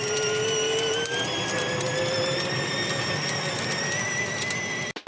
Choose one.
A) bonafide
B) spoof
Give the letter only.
A